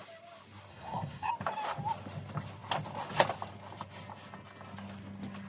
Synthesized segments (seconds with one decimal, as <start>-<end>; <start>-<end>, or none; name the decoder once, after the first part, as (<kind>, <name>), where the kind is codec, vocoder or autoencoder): 0.7-1.3 (codec, SNAC)